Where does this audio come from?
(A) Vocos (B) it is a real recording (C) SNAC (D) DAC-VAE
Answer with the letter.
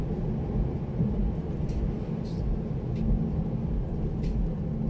B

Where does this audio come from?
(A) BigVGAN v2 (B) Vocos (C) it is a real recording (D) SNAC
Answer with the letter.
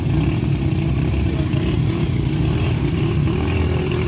A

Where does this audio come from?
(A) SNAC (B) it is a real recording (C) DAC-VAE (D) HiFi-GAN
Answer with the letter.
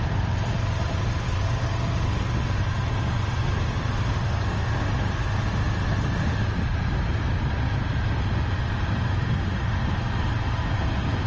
B